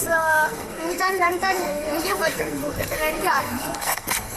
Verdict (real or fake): fake